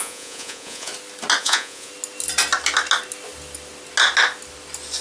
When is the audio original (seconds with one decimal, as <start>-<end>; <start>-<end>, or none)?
0.9-1.4; 1.9-5.0